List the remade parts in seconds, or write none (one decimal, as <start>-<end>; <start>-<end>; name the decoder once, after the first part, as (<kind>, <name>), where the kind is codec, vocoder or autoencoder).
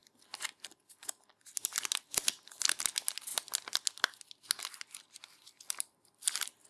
none